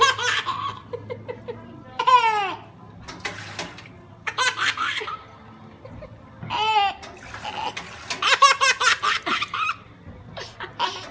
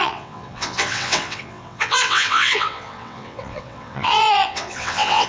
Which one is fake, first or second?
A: second